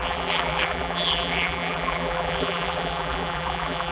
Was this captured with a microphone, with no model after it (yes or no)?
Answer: no